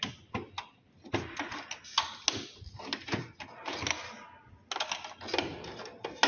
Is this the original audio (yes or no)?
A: yes